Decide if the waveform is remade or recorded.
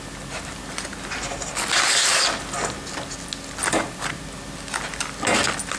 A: recorded